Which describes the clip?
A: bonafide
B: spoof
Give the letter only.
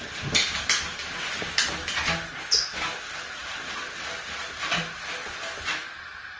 A